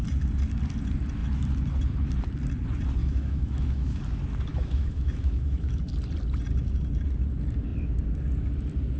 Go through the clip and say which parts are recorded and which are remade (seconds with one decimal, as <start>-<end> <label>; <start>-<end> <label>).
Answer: 0.0-3.0 recorded; 3.0-4.0 remade; 4.0-4.5 recorded; 4.5-5.8 remade; 5.8-9.0 recorded